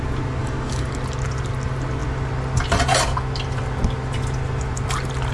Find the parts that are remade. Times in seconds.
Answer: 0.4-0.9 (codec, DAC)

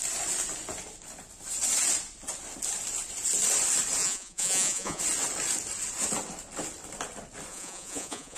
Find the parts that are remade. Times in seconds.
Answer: 4.0-5.0 (vocoder, Vocos); 7.5-8.4

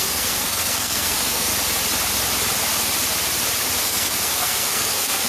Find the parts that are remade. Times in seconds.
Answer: 0.0-1.5 (codec, SNAC); 3.8-5.3

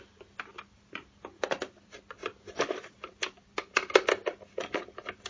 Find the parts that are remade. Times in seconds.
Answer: 0.0-2.2 (vocoder, BigVGAN v2); 2.7-5.3

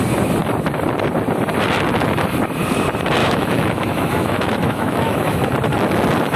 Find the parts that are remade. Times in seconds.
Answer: 3.2-5.5 (autoencoder, DAC-VAE)

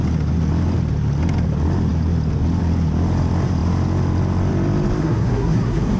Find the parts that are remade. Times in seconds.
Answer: 5.0-6.0 (codec, SNAC)

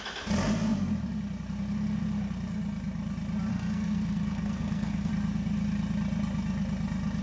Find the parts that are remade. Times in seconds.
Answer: 3.5-5.1 (codec, SNAC)

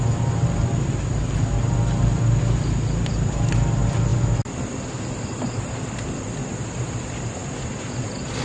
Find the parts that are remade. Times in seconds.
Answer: none